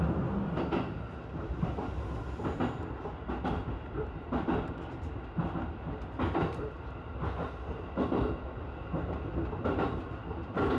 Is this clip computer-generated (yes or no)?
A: no